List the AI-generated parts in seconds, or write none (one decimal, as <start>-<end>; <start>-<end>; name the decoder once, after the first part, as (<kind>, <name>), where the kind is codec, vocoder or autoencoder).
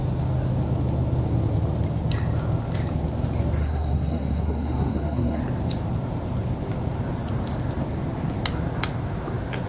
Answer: 3.6-5.4 (codec, SNAC)